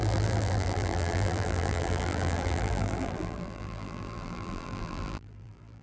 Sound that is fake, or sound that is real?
fake